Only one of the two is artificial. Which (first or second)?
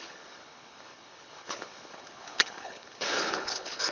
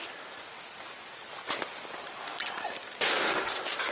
first